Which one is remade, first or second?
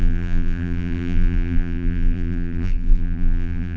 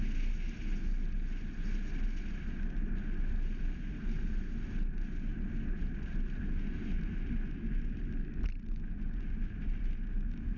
first